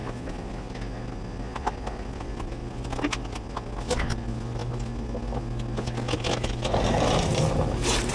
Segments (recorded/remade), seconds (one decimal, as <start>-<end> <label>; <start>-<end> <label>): 0.0-8.1 recorded